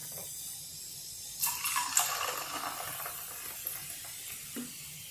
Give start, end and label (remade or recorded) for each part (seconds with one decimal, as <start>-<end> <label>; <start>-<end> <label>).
0.0-5.1 recorded

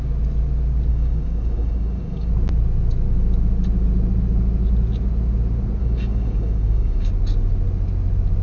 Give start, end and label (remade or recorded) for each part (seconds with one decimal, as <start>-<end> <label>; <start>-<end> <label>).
0.0-0.9 recorded; 0.9-2.3 remade; 2.3-5.8 recorded; 5.8-7.1 remade; 7.1-8.4 recorded

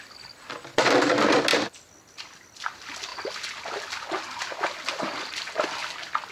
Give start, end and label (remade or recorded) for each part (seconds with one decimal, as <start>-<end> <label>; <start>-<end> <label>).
0.0-6.3 recorded